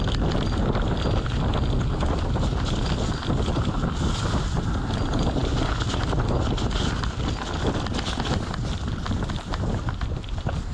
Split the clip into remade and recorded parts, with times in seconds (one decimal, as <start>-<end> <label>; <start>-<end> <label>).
0.0-10.7 recorded